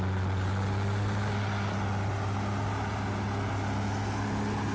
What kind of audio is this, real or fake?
real